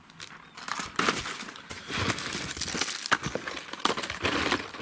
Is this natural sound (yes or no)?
yes